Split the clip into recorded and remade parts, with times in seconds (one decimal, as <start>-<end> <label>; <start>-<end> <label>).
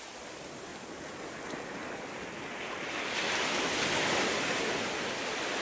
0.0-5.6 recorded